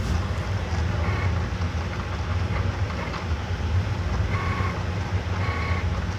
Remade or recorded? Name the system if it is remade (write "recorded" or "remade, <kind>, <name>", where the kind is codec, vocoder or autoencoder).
recorded